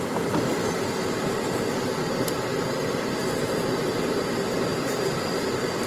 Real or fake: real